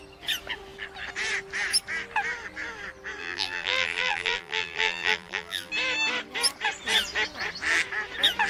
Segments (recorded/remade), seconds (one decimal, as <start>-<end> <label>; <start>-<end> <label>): 0.0-3.2 recorded; 3.2-5.7 remade; 5.7-8.5 recorded